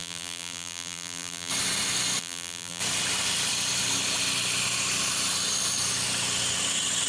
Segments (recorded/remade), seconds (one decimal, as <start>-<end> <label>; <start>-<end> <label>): 0.0-1.5 remade; 1.5-2.2 recorded; 2.2-2.8 remade; 2.8-7.1 recorded